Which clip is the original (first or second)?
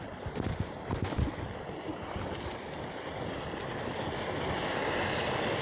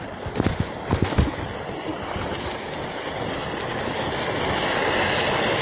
second